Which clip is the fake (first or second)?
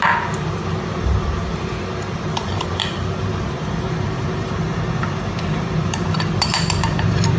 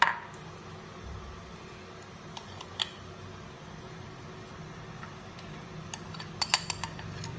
first